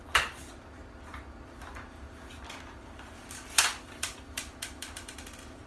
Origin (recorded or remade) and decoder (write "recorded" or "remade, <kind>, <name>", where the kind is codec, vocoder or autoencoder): remade, vocoder, BigVGAN v2